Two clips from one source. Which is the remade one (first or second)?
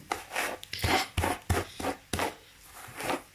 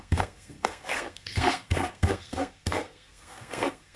second